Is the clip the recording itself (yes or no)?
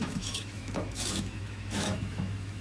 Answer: no